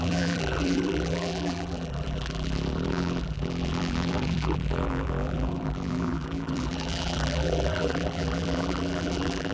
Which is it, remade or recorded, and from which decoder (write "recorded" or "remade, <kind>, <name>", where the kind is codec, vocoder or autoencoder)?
remade, vocoder, BigVGAN v2